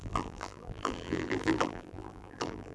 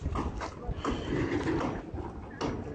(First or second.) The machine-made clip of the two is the first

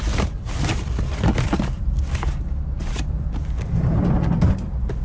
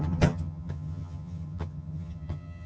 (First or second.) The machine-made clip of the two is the second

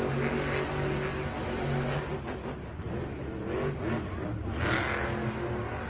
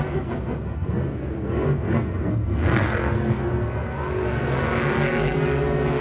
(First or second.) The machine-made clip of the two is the second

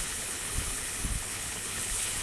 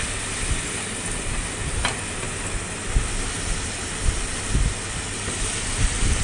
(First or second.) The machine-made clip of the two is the first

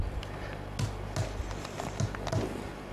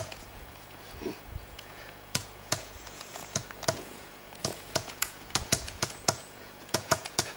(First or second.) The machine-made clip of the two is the second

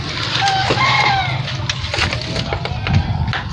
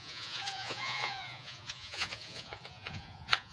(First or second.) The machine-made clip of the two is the second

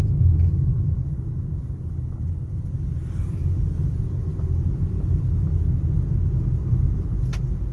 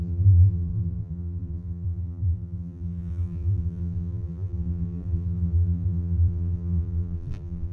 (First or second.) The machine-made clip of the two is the second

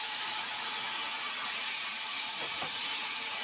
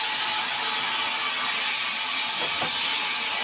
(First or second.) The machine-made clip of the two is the first